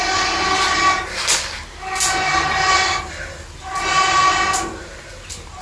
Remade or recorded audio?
recorded